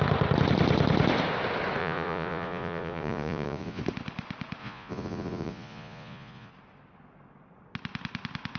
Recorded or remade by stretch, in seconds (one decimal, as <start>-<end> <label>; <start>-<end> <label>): 0.0-1.8 recorded; 1.8-3.8 remade; 3.8-4.6 recorded; 4.6-6.5 remade; 6.5-8.6 recorded